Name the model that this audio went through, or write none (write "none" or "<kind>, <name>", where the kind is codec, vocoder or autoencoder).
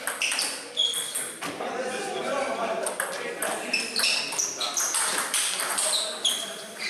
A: vocoder, BigVGAN v2